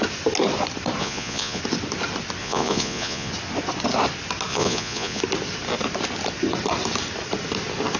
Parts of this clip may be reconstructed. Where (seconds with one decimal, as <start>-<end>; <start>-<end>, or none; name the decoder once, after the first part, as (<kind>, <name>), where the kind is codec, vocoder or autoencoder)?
1.0-1.6 (vocoder, Vocos); 2.4-3.3; 4.5-5.2